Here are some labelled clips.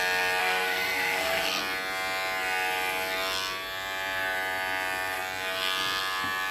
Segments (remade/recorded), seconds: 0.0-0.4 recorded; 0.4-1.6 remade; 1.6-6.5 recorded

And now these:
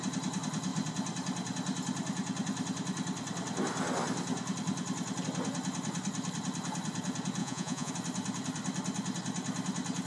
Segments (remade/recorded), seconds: 0.0-7.4 recorded; 7.4-7.9 remade; 7.9-10.1 recorded

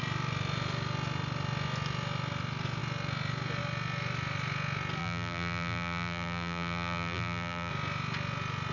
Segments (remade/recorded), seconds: 0.0-5.0 recorded; 5.0-7.7 remade; 7.7-8.7 recorded

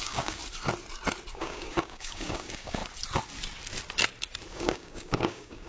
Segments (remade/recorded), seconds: 0.0-0.4 remade; 0.4-1.3 recorded; 1.3-2.8 remade; 2.8-4.5 recorded; 4.5-5.7 remade